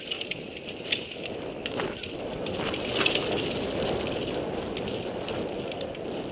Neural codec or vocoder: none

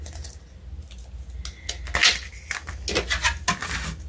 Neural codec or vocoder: none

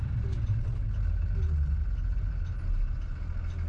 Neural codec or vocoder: none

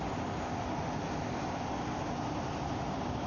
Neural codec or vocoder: none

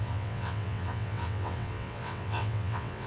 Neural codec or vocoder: vocoder, WaveNeXt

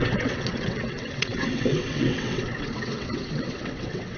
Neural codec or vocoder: vocoder, WaveNeXt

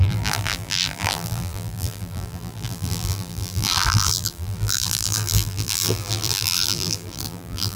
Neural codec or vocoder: vocoder, BigVGAN v2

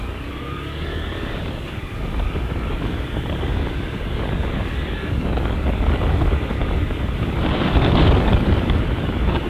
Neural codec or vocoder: codec, DAC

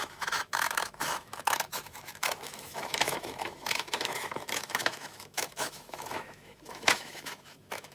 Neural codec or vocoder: autoencoder, DAC-VAE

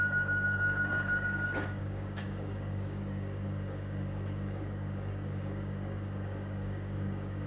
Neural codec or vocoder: codec, DAC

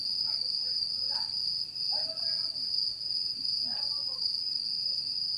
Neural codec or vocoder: none